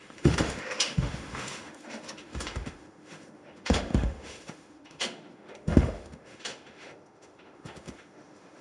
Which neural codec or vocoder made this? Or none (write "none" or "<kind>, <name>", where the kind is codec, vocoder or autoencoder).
autoencoder, DAC-VAE